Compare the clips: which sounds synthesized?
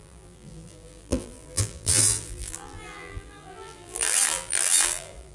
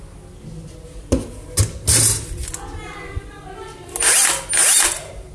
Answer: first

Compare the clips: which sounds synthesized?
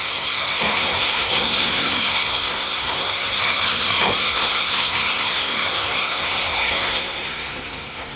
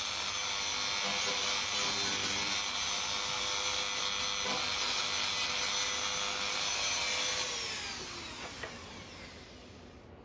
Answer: first